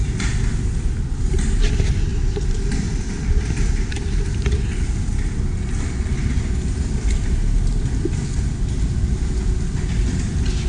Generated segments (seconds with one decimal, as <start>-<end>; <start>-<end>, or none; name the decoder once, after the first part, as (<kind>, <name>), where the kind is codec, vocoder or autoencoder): none